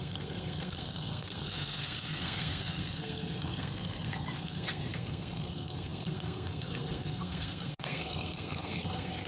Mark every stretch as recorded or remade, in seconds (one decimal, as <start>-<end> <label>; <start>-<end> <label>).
0.0-9.3 remade